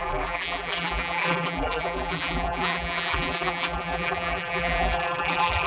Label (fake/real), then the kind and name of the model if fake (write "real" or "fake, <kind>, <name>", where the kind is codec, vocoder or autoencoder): fake, vocoder, BigVGAN v2